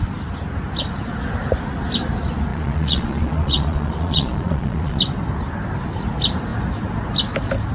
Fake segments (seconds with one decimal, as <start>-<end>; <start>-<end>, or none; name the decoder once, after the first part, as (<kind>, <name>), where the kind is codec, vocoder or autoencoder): 2.5-5.0 (vocoder, Vocos)